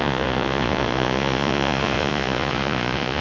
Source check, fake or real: fake